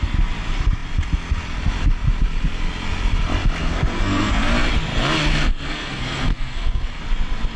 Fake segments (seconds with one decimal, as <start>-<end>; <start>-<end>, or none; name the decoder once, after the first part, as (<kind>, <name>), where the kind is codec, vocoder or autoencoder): 3.6-4.5 (codec, SNAC); 5.3-7.0